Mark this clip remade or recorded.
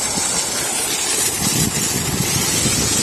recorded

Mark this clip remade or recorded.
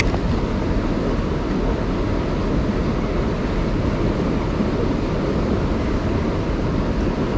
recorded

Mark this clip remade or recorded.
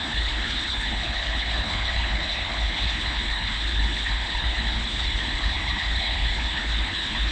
remade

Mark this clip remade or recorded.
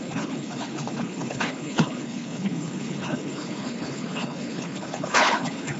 remade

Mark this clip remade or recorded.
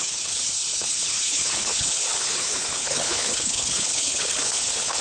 remade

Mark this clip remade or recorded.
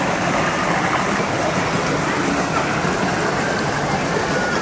recorded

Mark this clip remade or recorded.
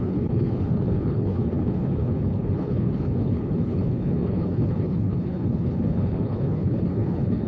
remade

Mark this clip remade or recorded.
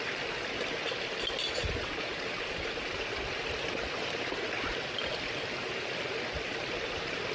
recorded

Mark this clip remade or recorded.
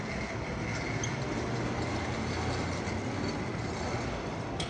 recorded